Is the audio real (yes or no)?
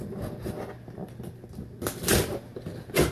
yes